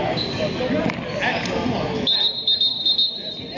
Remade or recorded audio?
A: recorded